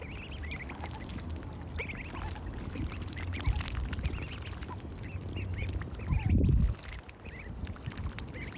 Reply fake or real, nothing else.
real